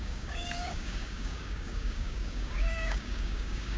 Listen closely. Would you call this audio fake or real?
fake